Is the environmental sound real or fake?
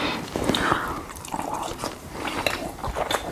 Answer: fake